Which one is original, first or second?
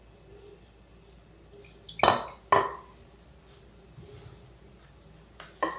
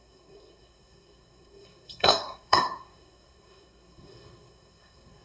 first